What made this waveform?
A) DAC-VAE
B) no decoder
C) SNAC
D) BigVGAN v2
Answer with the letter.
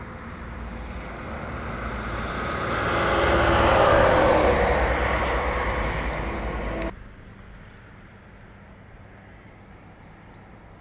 B